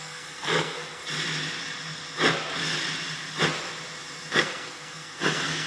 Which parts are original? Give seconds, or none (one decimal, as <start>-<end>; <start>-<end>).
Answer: 1.0-4.3